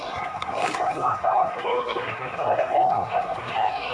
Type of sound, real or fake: fake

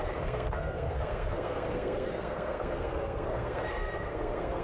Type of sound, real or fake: fake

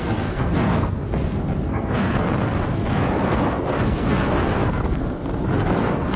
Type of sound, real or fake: fake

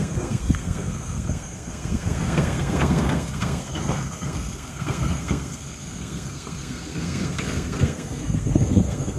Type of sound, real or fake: fake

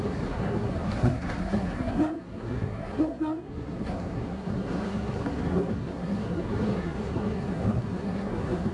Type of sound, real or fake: fake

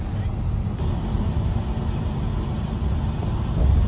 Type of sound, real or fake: real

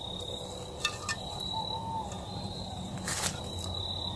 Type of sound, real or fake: real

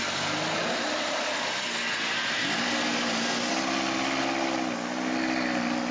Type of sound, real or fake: real